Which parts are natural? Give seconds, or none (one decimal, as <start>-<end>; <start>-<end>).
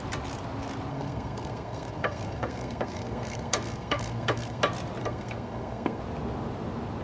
0.0-0.9; 4.6-5.0; 6.0-7.0